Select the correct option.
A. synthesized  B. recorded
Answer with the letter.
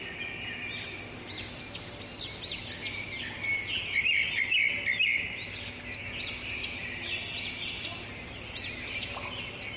B